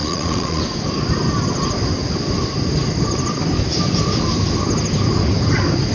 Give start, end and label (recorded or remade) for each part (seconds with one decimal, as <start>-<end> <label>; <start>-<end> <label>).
0.0-0.6 remade; 0.6-5.9 recorded